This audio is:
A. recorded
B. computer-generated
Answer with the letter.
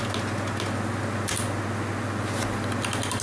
A